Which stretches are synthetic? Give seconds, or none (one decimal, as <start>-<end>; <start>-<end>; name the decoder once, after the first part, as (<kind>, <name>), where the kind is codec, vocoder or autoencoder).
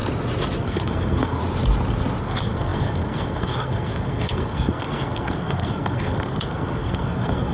0.6-1.4 (codec, SNAC); 2.2-7.5